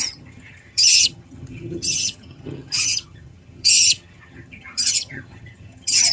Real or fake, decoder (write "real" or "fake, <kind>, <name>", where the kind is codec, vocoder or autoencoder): fake, vocoder, HiFi-GAN